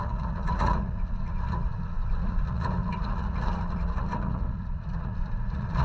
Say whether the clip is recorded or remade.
remade